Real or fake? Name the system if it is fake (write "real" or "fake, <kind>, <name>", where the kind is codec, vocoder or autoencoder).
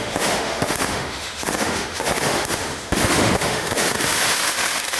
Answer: fake, autoencoder, DAC-VAE